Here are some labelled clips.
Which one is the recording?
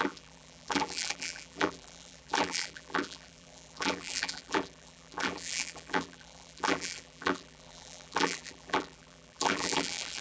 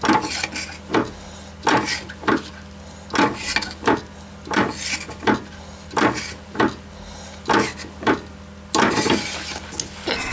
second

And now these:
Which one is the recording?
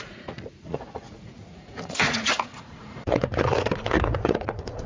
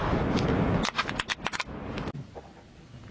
second